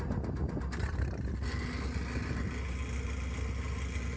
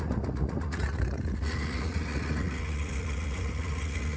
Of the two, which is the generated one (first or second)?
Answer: second